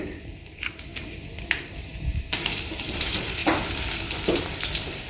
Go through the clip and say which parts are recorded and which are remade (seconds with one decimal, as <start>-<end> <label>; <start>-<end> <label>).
0.0-0.9 remade; 0.9-1.8 recorded; 1.8-3.4 remade; 3.4-5.1 recorded